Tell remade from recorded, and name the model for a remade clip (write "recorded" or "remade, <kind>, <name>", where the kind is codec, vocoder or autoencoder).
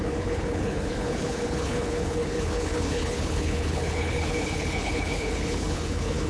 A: remade, codec, HILCodec